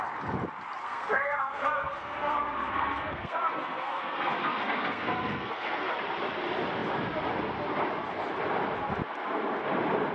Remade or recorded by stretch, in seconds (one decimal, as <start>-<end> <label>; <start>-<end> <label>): 0.0-0.8 recorded; 0.8-5.9 remade; 5.9-10.1 recorded

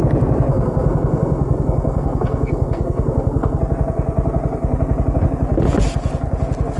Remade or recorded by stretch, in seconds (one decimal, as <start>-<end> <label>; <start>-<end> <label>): 0.0-0.5 recorded; 0.5-3.6 remade; 3.6-6.8 recorded

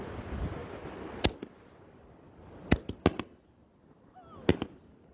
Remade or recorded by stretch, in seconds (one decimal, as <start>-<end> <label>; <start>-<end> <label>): 0.0-5.1 recorded

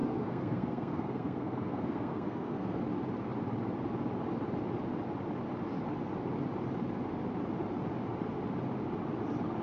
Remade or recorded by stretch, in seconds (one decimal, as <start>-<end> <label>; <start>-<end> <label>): 0.0-2.8 remade; 2.8-9.6 recorded

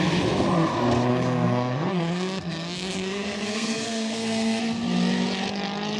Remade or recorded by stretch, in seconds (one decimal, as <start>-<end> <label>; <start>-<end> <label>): 0.0-1.1 recorded; 1.1-4.6 remade; 4.6-6.0 recorded

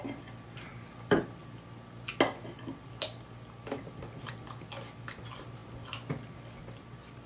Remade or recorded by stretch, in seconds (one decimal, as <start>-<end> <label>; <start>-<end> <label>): 0.0-7.3 recorded